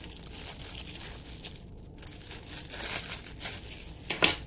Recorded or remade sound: recorded